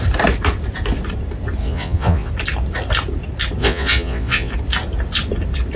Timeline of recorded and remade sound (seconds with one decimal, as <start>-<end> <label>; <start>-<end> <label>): 0.0-1.6 recorded; 1.6-2.3 remade; 2.3-3.6 recorded; 3.6-4.5 remade; 4.5-5.8 recorded